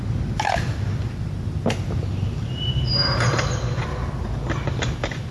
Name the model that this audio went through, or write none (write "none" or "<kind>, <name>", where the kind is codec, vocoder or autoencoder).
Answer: none